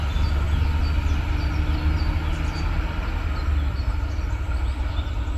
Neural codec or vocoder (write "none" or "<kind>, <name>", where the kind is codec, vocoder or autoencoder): none